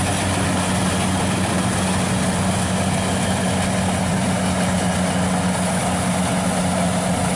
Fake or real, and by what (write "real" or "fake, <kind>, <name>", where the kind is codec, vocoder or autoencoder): real